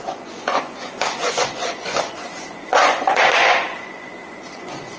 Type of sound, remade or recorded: remade